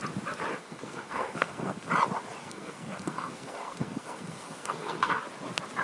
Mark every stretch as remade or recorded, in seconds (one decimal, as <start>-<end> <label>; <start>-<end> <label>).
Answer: 0.0-0.6 recorded; 0.6-1.9 remade; 1.9-2.4 recorded; 2.4-5.2 remade; 5.2-5.8 recorded